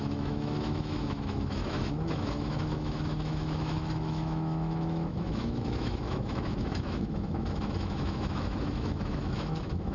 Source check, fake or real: fake